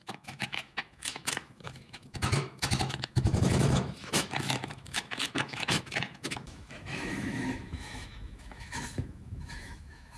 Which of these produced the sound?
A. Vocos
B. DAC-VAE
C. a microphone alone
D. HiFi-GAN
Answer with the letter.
B